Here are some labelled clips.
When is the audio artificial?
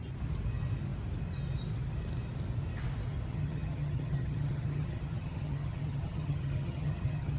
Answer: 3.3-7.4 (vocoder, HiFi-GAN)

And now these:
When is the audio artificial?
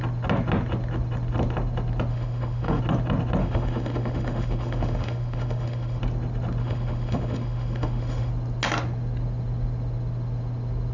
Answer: 2.1-2.8 (autoencoder, DAC-VAE); 3.4-6.0; 6.6-8.3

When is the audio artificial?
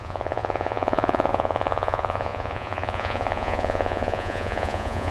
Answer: 0.0-5.1 (vocoder, Vocos)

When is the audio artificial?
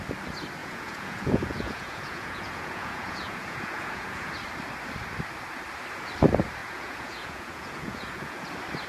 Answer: 0.6-4.3 (vocoder, Vocos); 6.6-8.5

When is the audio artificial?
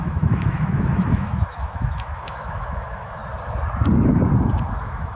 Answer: 0.0-3.2 (autoencoder, DAC-VAE); 4.5-5.2